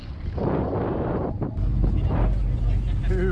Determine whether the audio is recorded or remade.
recorded